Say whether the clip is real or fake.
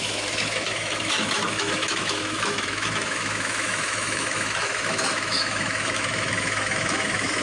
fake